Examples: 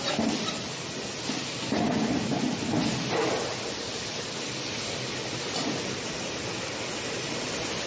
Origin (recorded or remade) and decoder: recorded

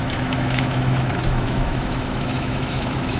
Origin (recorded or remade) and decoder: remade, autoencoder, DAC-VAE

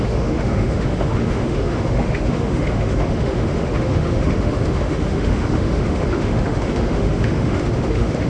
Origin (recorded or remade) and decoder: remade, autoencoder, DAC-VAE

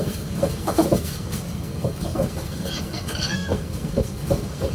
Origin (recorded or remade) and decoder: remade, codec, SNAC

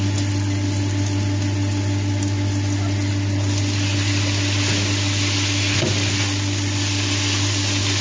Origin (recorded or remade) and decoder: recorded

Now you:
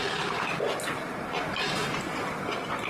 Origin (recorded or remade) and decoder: recorded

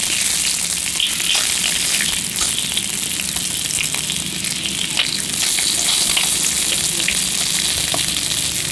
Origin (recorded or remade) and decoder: recorded